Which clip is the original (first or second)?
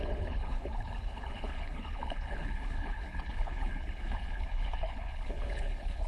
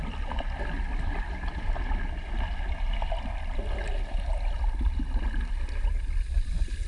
second